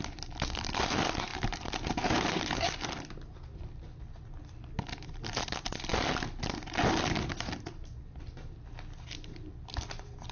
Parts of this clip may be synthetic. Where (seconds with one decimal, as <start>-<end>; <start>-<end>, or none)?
1.3-2.4